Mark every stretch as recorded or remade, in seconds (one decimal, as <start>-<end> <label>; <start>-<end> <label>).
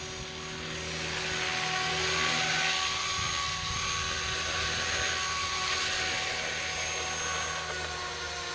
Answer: 0.0-8.5 recorded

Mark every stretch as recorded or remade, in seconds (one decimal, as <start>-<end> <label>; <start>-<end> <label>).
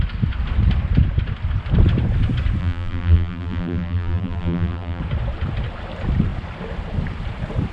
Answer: 0.0-2.6 recorded; 2.6-5.0 remade; 5.0-7.7 recorded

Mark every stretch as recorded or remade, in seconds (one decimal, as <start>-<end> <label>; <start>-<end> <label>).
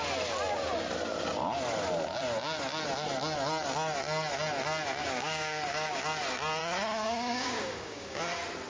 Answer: 0.0-5.0 recorded; 5.0-6.0 remade; 6.0-6.6 recorded; 6.6-8.2 remade; 8.2-8.7 recorded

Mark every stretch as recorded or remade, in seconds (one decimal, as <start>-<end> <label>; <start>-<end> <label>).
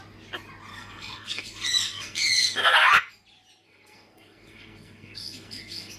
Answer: 0.0-0.7 recorded; 0.7-3.1 remade; 3.1-3.6 recorded; 3.6-6.0 remade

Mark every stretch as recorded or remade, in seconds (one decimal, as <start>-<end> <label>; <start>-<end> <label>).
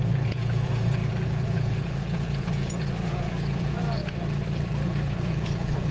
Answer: 0.0-4.0 remade; 4.0-4.7 recorded; 4.7-5.9 remade